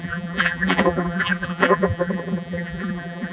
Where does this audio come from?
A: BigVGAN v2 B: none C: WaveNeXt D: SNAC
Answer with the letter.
A